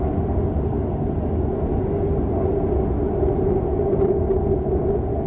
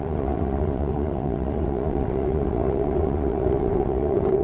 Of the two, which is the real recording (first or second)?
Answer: first